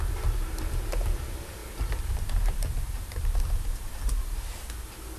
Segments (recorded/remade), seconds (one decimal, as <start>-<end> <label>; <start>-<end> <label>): 0.0-1.6 recorded; 1.6-4.7 remade; 4.7-5.2 recorded